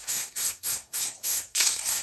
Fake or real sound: fake